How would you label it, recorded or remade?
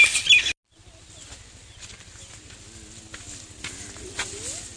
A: recorded